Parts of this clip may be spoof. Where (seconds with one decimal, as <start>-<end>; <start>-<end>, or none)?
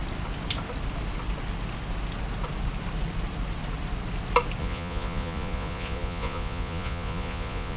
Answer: 4.6-7.8